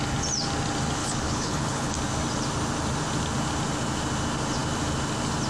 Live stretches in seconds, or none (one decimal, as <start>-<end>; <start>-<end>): 0.0-1.0; 1.9-5.5